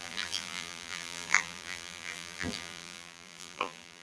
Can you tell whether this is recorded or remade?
remade